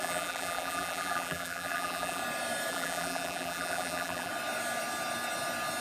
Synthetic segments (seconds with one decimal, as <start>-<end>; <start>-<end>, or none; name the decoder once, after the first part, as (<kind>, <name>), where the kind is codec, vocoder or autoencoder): 0.0-2.2 (vocoder, BigVGAN v2); 2.7-4.3